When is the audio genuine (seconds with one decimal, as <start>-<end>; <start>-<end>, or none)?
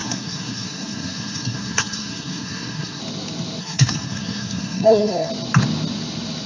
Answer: 3.0-3.6; 5.3-6.5